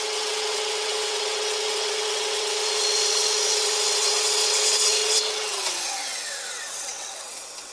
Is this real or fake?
fake